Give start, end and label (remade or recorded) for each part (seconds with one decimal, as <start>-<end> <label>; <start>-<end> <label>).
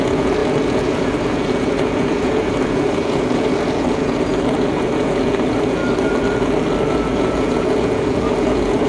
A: 0.0-5.8 remade; 5.8-6.9 recorded; 6.9-8.9 remade